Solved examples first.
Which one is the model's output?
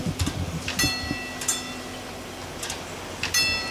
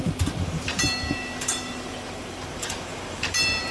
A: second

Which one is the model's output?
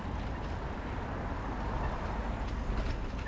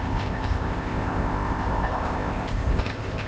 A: second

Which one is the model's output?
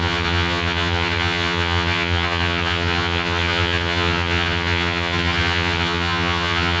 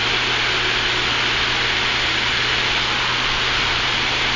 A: first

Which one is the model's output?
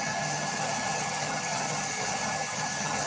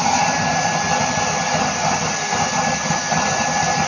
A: first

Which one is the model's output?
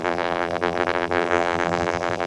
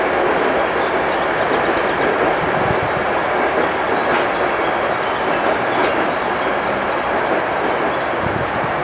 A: first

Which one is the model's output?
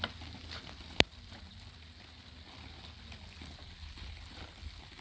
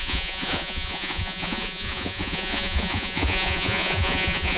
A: second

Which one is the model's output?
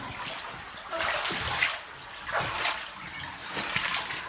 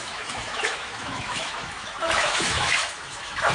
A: second